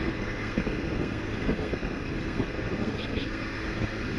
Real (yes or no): no